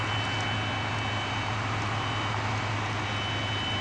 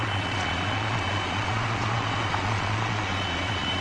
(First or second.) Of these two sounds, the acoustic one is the first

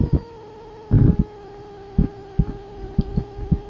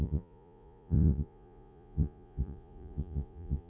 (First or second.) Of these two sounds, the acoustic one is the first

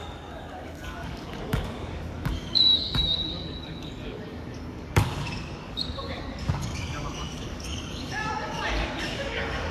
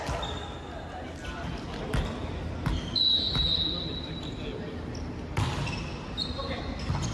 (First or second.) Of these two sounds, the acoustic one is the second